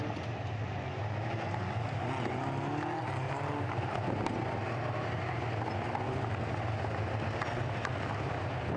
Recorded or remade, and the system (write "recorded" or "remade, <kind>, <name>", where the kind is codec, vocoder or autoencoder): recorded